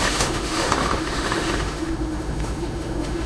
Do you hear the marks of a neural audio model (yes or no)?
yes